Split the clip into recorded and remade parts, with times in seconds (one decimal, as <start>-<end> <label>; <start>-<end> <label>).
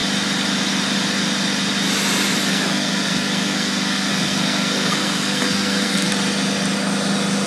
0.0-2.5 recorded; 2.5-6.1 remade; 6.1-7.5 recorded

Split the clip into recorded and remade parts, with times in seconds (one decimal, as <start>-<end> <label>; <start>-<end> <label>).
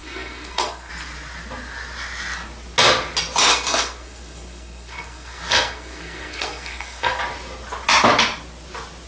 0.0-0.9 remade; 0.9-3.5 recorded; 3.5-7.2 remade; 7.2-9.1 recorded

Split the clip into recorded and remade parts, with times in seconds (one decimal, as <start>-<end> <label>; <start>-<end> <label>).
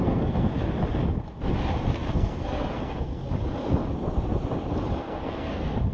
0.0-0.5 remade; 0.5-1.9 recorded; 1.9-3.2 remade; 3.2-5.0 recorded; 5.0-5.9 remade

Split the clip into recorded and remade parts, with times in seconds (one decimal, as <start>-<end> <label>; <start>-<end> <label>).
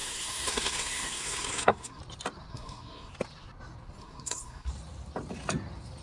0.0-2.0 remade; 2.0-2.5 recorded; 2.5-3.1 remade; 3.1-4.0 recorded; 4.0-4.7 remade; 4.7-6.0 recorded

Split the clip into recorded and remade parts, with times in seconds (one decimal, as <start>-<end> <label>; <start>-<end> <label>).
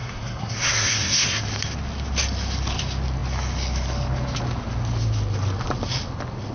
0.0-1.4 remade; 1.4-6.5 recorded